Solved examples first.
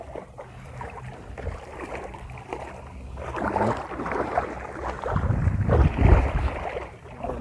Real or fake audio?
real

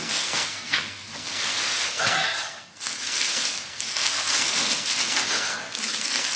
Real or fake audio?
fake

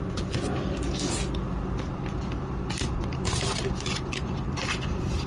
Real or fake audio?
real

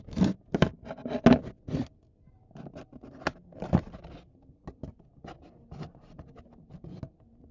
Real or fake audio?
real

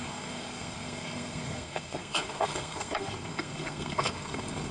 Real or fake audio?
fake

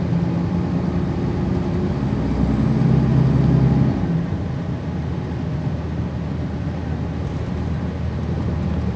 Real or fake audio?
real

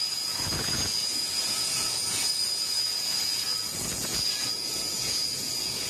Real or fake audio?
fake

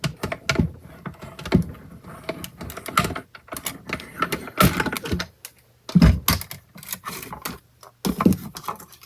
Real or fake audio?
real